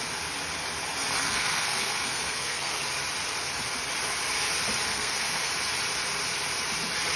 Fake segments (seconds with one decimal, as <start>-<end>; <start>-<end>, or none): 1.2-2.8; 4.9-5.5